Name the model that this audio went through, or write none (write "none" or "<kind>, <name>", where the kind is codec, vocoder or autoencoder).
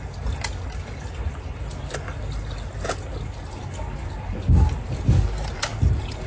none